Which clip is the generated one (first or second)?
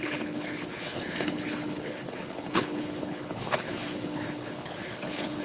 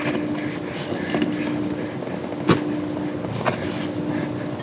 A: first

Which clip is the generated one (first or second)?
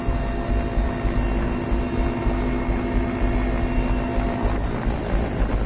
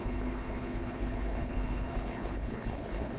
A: second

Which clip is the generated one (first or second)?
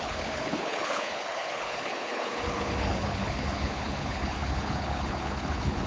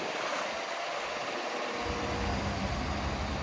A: first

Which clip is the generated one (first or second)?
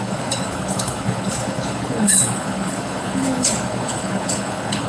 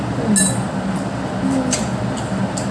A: first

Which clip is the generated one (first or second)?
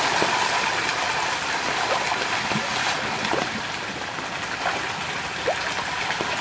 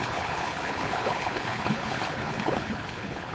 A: second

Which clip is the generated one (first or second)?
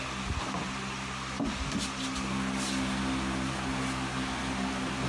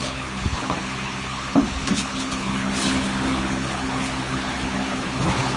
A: second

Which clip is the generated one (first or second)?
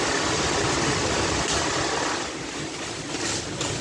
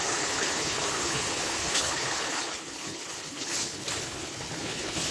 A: second